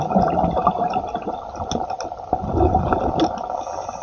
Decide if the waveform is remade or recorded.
recorded